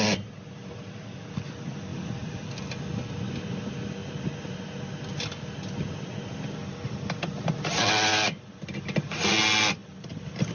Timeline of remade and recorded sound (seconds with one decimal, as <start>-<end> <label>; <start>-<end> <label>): 0.0-1.9 recorded; 1.9-2.6 remade; 2.6-8.1 recorded; 8.1-9.3 remade; 9.3-9.8 recorded; 9.8-10.5 remade